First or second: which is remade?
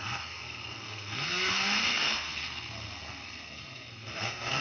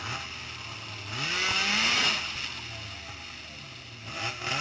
first